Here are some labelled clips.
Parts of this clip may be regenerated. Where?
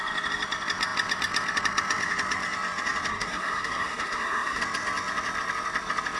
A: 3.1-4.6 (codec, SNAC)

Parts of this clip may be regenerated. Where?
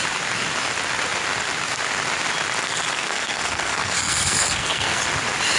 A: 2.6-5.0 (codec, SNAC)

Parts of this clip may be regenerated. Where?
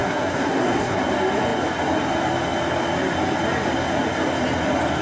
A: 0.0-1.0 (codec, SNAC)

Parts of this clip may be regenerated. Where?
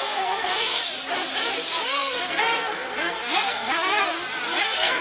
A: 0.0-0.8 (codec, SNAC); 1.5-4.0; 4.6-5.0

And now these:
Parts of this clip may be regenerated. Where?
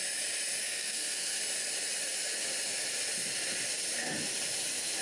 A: 0.6-1.4 (codec, SNAC)